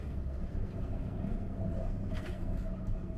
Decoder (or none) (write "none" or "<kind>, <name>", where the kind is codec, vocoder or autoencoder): codec, SNAC